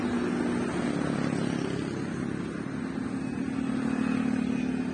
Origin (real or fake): real